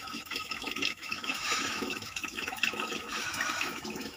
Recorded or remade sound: remade